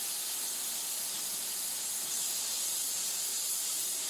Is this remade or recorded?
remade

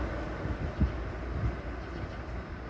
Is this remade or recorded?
recorded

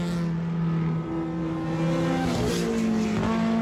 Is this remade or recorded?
recorded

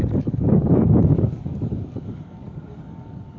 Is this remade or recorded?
remade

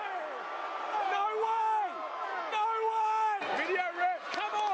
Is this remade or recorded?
recorded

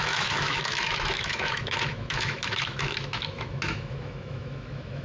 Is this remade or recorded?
remade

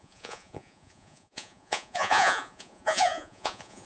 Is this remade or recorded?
remade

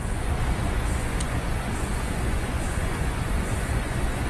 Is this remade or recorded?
remade